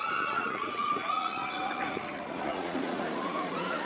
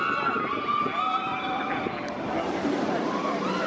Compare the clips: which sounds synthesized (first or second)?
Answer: first